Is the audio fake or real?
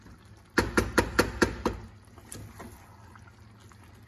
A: real